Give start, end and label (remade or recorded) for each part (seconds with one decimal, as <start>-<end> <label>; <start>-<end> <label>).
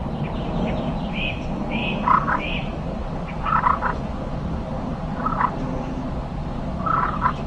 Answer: 0.0-7.5 recorded